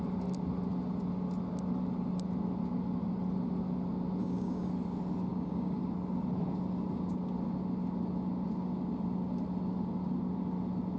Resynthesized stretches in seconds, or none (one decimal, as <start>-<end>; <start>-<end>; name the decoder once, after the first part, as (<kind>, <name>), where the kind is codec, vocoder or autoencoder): 4.2-4.7 (codec, DAC); 5.3-5.8